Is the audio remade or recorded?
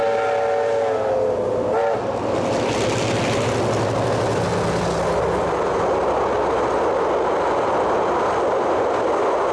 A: recorded